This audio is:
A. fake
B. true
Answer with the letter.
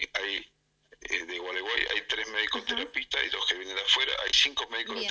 B